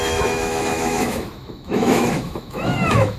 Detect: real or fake fake